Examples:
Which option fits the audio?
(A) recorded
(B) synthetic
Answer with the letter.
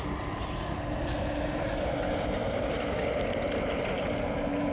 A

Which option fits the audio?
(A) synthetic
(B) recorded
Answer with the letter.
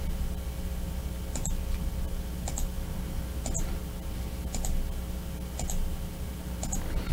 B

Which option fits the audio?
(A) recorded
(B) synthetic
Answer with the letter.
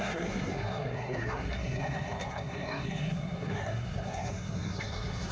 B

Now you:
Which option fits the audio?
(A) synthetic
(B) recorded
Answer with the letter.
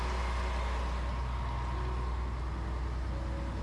B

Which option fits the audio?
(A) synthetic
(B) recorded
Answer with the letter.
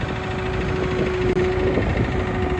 B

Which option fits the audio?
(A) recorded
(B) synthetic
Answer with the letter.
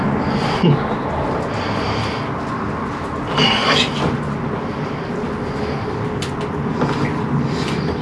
A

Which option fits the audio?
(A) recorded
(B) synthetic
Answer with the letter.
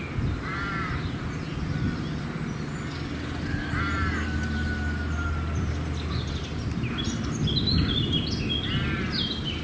A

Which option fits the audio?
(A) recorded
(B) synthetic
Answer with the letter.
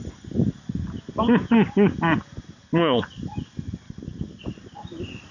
A